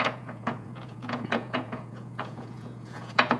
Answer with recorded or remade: remade